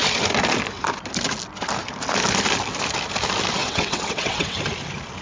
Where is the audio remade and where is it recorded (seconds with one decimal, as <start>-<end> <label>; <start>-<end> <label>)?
0.0-3.6 recorded; 3.6-4.6 remade; 4.6-5.2 recorded